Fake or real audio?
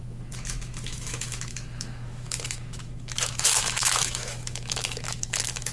fake